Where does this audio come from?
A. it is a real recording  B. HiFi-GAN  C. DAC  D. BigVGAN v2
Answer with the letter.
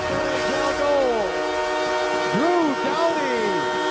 A